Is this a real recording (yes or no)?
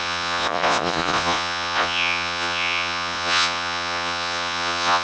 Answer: no